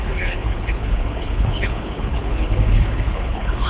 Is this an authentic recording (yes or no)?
no